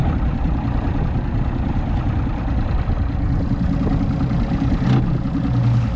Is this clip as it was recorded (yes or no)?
yes